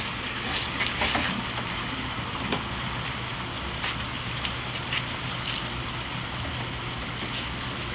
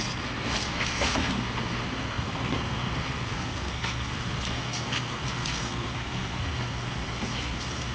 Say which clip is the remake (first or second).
second